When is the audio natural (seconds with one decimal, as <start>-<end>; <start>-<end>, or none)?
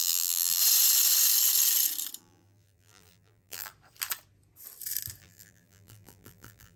0.6-2.2; 3.7-5.2